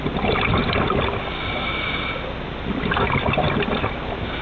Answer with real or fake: real